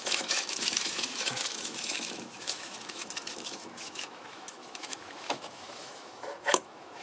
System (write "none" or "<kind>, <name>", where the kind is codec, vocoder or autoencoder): autoencoder, DAC-VAE